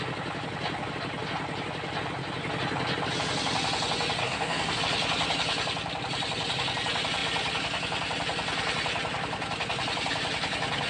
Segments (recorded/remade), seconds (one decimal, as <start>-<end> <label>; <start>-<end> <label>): 0.0-4.2 recorded; 4.2-4.8 remade; 4.8-10.9 recorded